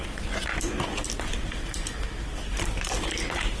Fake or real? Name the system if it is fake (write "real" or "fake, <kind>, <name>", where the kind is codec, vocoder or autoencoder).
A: fake, vocoder, BigVGAN v2